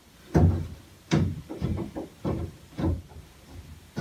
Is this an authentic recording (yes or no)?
no